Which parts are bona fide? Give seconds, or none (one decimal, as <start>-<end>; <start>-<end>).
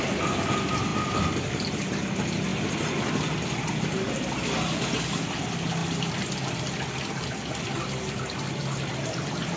0.0-9.6